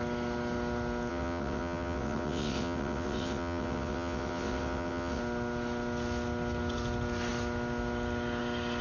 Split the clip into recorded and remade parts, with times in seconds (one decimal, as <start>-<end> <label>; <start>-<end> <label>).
0.0-1.1 recorded; 1.1-5.2 remade; 5.2-8.8 recorded